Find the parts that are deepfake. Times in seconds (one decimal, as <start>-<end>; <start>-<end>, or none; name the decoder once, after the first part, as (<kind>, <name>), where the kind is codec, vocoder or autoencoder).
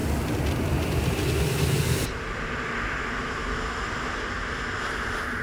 none